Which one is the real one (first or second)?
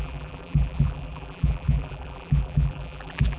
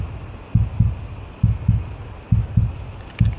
second